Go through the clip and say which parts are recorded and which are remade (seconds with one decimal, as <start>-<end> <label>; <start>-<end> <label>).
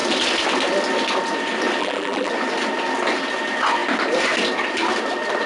0.0-1.8 recorded; 1.8-2.3 remade; 2.3-5.5 recorded